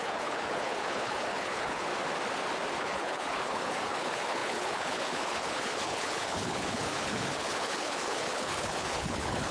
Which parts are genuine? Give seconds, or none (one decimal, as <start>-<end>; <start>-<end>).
1.9-2.8